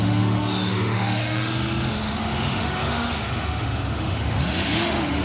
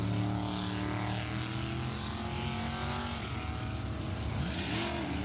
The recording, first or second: second